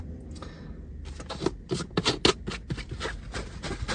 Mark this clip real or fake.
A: real